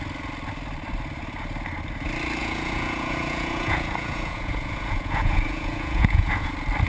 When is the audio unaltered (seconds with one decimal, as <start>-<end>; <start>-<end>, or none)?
0.0-2.4; 6.5-6.9